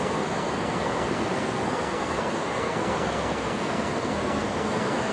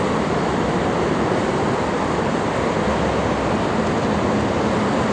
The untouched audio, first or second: second